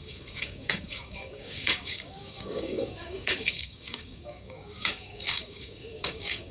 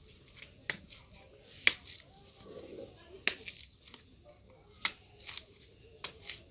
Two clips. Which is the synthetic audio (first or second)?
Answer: first